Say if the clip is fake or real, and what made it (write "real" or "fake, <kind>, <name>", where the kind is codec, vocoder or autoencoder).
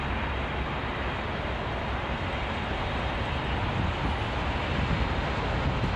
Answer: real